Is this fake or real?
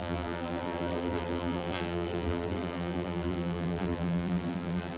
fake